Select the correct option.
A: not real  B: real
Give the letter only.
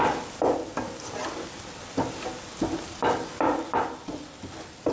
B